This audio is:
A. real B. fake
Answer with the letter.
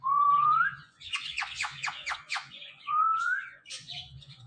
B